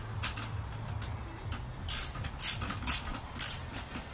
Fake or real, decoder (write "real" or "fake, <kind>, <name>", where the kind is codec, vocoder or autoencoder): real